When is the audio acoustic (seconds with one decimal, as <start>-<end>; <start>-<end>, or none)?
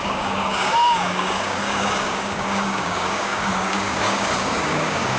none